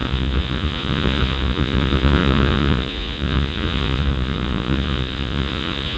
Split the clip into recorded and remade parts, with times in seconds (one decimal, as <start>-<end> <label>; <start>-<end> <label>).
0.0-6.0 remade